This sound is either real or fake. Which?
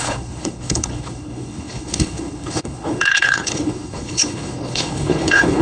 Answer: fake